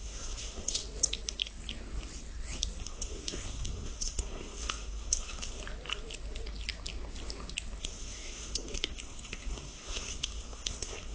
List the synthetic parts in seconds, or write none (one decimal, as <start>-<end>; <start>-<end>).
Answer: 0.0-0.8; 2.8-5.6; 7.8-11.1